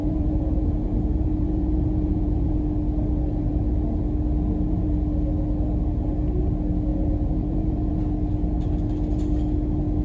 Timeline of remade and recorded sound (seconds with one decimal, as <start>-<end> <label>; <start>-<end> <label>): 0.0-2.6 remade; 2.6-6.9 recorded; 6.9-8.0 remade; 8.0-10.0 recorded